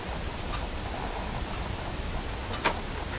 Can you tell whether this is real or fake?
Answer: real